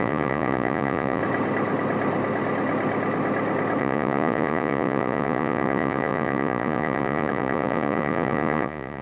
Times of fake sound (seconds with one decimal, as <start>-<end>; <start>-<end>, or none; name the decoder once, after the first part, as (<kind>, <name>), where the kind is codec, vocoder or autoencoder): 0.0-1.2 (vocoder, Vocos); 3.8-9.0